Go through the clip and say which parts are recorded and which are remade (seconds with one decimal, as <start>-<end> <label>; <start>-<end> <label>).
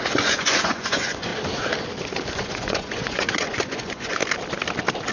0.0-1.3 remade; 1.3-2.3 recorded; 2.3-4.2 remade; 4.2-5.1 recorded